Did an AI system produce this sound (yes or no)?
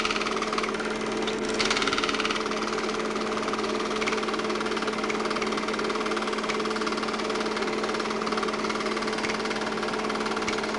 no